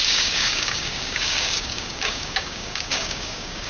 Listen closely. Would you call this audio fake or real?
fake